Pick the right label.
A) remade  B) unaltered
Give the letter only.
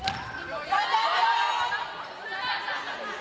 B